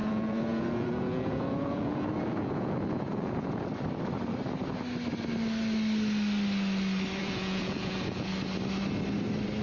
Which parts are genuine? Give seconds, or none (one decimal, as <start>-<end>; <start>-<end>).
3.6-7.2; 8.3-9.6